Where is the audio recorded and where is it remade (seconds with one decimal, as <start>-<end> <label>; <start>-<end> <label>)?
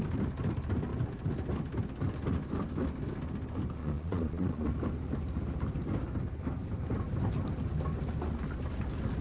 0.0-3.8 recorded; 3.8-4.7 remade; 4.7-9.2 recorded